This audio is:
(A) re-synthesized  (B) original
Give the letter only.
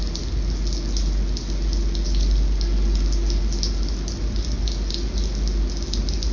B